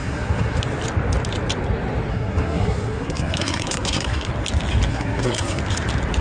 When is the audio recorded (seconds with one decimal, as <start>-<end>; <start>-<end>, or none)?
0.6-2.1; 4.3-4.9; 5.6-6.2